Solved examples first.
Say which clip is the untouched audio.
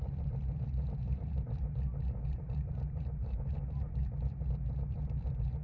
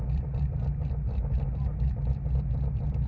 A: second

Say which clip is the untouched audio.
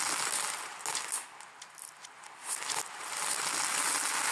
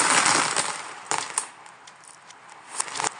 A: first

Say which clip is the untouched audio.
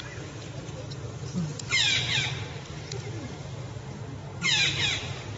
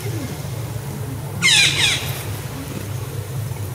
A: second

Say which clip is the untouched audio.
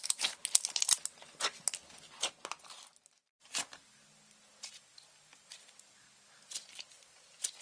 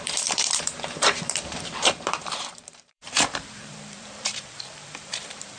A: first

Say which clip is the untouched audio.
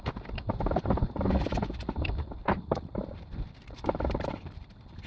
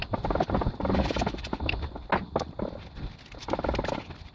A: second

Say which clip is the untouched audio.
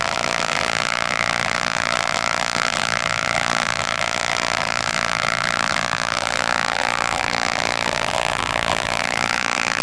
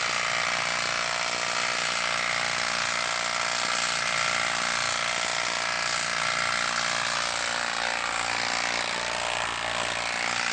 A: second